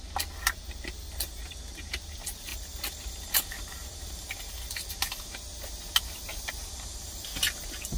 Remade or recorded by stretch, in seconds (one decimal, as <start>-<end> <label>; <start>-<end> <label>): 0.0-2.5 recorded; 2.5-4.5 remade; 4.5-6.7 recorded; 6.7-7.4 remade; 7.4-8.0 recorded